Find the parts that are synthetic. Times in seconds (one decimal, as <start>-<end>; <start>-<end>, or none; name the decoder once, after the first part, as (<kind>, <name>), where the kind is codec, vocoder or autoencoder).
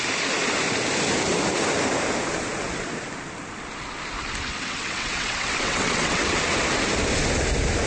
4.5-6.4 (vocoder, WaveNeXt)